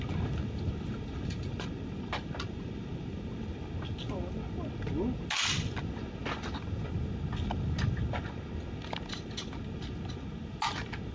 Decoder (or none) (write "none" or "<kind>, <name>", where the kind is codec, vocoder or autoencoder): none